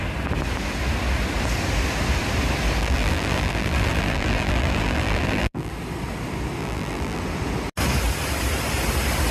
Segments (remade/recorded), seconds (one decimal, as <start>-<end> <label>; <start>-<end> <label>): 0.0-2.8 recorded; 2.8-5.7 remade; 5.7-6.6 recorded; 6.6-7.2 remade; 7.2-9.3 recorded